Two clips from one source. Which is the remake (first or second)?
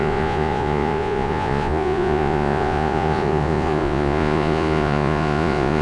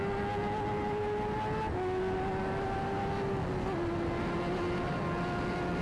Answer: first